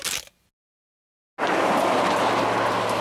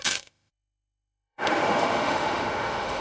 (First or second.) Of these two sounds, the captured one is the first